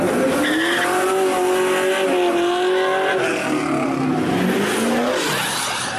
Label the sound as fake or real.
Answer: real